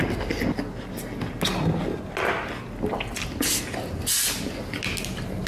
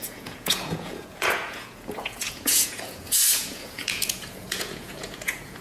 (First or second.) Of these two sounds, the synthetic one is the second